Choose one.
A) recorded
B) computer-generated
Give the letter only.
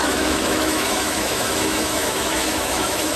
B